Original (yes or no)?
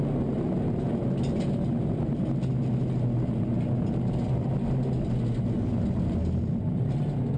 yes